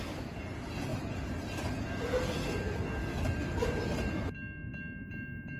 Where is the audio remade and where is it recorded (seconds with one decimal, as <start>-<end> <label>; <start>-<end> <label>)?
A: 0.0-5.6 recorded